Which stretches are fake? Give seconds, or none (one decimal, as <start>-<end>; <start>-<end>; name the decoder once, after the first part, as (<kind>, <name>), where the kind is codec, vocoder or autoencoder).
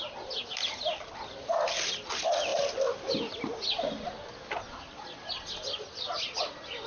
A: none